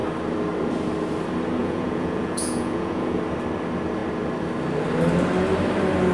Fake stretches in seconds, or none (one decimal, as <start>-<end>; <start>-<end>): 1.6-3.2